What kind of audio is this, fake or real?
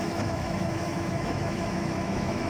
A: fake